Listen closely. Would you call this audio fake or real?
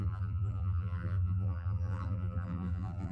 fake